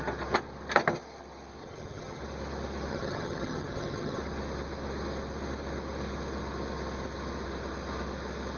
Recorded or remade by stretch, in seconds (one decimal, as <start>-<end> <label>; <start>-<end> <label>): 0.0-1.6 recorded; 1.6-2.2 remade; 2.2-2.9 recorded; 2.9-4.2 remade; 4.2-8.6 recorded